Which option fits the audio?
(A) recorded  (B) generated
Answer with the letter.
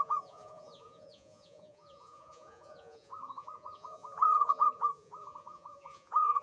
B